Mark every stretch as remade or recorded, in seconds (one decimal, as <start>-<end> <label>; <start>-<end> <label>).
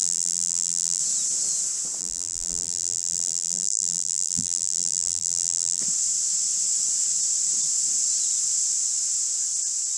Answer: 0.0-1.0 remade; 1.0-2.0 recorded; 2.0-5.8 remade; 5.8-10.0 recorded